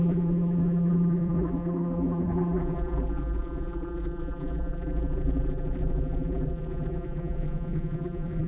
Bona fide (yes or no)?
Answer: no